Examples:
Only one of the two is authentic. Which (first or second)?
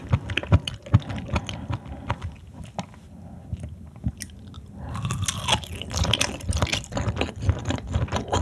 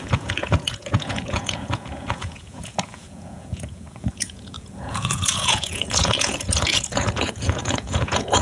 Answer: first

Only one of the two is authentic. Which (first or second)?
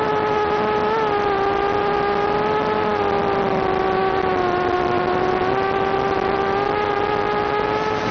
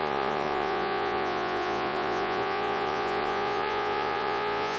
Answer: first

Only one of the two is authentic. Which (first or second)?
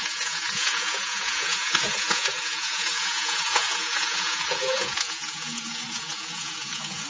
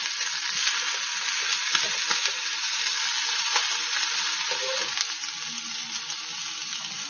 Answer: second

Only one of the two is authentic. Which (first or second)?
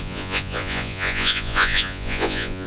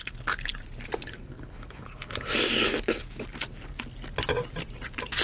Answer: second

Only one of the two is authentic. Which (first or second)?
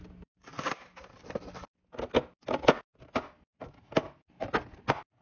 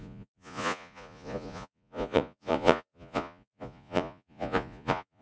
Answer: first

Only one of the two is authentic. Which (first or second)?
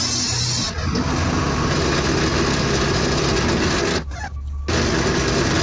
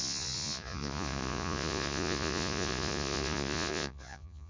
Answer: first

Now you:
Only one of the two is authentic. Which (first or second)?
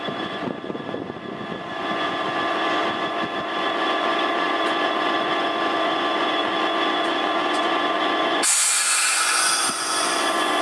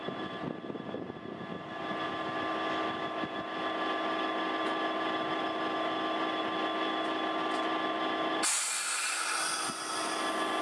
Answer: second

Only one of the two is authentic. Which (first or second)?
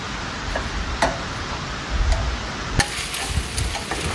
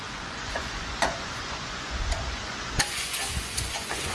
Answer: first